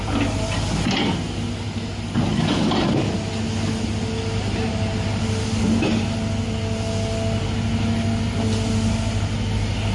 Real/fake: real